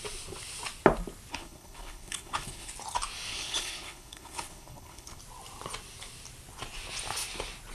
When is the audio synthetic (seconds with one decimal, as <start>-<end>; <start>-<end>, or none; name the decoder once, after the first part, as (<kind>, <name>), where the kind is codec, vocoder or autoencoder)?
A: 1.3-2.7 (codec, HILCodec); 3.3-5.2

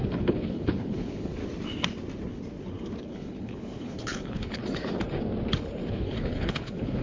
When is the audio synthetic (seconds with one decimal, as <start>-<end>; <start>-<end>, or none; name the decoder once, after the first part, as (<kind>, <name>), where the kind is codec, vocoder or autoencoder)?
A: 0.0-1.4 (codec, HILCodec); 3.0-4.6; 5.9-7.0